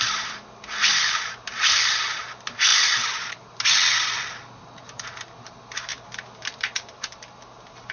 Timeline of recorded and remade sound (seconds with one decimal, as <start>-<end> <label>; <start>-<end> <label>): 0.0-7.9 recorded